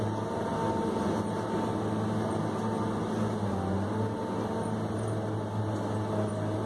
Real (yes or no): yes